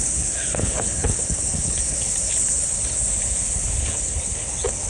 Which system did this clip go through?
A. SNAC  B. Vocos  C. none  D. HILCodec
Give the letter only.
D